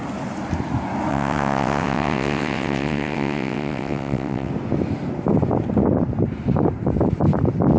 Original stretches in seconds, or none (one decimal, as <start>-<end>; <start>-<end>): 0.0-1.1; 4.5-7.8